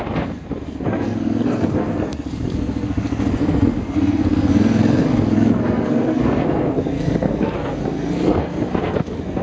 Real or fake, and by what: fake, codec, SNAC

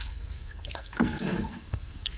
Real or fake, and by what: fake, codec, SNAC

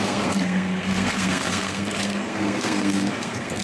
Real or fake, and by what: fake, codec, SNAC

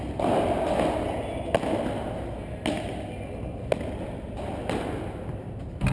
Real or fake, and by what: real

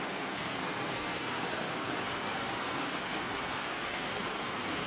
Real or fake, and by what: fake, codec, SNAC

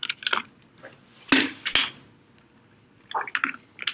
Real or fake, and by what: real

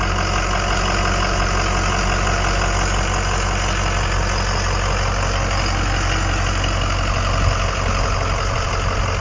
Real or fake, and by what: real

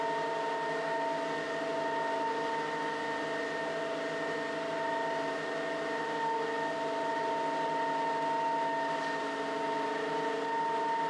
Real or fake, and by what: real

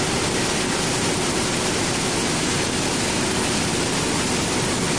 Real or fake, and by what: real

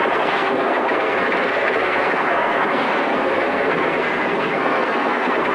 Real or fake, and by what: fake, codec, SNAC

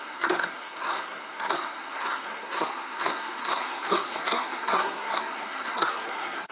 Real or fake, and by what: fake, codec, SNAC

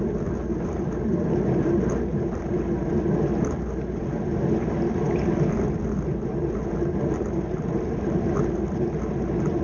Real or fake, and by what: real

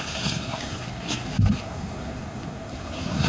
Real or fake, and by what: fake, codec, SNAC